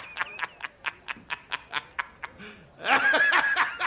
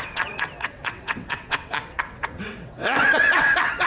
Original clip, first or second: first